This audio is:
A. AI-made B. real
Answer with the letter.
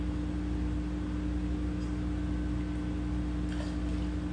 B